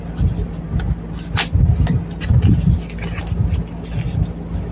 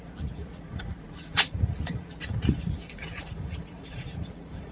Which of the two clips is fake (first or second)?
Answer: second